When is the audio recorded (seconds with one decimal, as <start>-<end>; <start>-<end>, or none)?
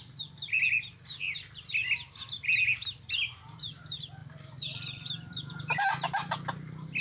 0.0-4.2; 5.6-7.0